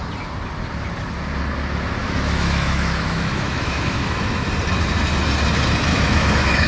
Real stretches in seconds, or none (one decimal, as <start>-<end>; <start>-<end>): 0.0-2.0; 4.2-5.9